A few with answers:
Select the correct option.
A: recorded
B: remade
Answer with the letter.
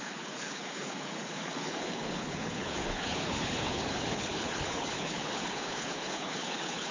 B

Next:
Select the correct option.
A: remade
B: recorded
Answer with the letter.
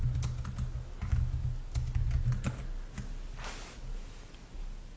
B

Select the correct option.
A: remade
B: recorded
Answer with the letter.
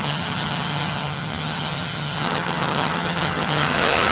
A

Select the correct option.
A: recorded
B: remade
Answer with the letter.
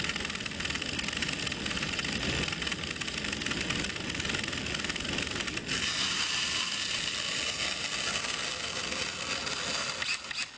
A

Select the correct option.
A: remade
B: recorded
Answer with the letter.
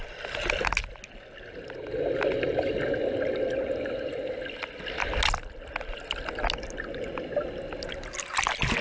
B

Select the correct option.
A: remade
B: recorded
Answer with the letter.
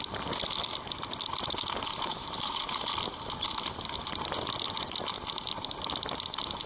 B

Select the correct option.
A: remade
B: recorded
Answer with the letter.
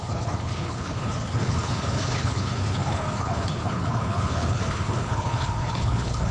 A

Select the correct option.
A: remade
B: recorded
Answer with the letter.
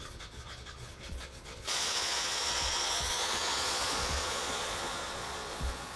A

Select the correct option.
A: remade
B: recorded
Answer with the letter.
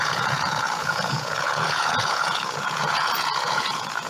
A